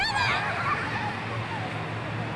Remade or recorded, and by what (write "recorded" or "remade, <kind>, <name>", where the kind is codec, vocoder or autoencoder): recorded